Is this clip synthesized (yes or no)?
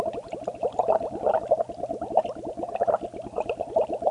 no